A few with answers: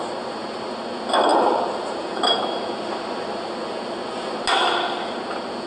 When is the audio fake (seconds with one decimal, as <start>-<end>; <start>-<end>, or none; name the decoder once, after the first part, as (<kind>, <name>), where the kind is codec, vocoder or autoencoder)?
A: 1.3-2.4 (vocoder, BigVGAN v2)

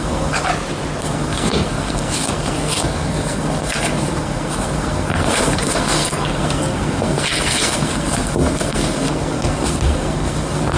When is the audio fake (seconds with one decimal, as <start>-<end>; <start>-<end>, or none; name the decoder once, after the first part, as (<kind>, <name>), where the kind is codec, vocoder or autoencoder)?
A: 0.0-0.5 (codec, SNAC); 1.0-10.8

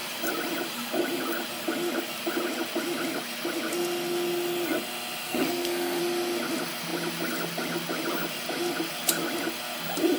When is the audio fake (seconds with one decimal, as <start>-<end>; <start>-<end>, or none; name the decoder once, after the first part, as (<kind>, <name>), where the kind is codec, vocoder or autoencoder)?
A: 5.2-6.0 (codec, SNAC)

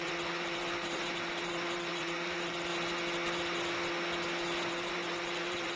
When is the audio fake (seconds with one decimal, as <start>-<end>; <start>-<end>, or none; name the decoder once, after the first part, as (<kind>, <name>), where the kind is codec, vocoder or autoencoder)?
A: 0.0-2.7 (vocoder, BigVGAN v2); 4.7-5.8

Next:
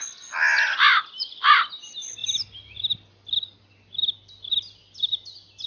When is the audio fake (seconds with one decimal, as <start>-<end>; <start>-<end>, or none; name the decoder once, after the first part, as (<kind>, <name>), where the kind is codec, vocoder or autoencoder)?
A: none